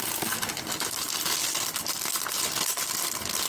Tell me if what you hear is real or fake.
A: real